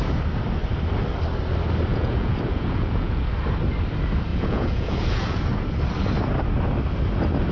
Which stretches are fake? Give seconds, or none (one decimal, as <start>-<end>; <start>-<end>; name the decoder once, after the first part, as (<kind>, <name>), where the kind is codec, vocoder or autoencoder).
1.9-3.3 (vocoder, Vocos); 4.3-5.4